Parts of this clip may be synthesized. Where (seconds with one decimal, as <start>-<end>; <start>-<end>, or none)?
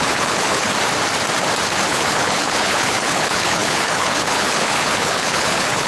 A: 0.0-0.7; 1.9-5.9